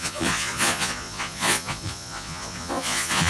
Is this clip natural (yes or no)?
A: no